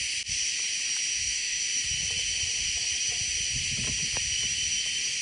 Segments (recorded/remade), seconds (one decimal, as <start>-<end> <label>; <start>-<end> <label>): 0.0-1.1 recorded; 1.1-1.6 remade; 1.6-5.2 recorded